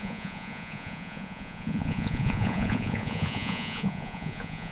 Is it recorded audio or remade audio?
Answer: remade